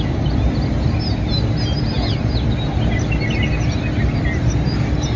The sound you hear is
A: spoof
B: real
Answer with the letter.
B